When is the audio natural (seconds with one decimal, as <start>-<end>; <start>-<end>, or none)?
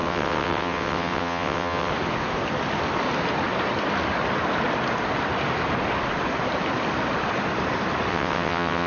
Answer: 1.9-8.1